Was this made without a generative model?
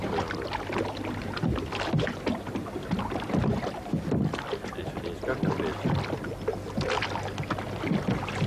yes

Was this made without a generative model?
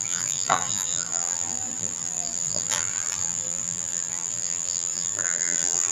no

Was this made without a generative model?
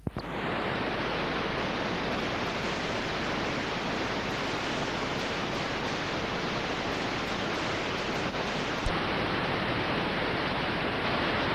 yes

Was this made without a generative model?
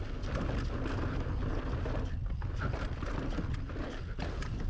yes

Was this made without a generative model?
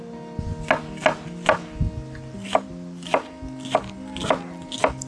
yes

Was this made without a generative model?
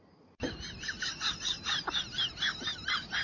yes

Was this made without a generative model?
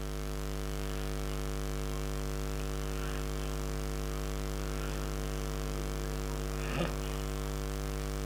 yes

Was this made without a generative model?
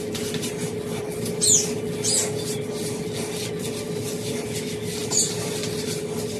yes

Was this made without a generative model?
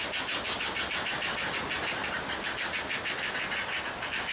yes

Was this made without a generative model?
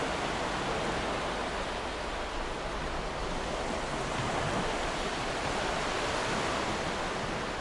yes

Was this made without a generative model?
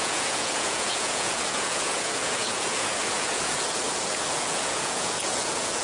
no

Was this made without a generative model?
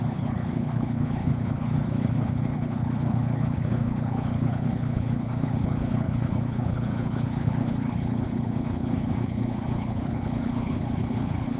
no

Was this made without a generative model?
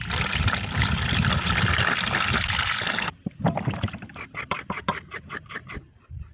yes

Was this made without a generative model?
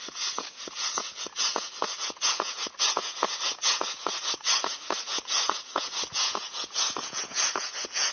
no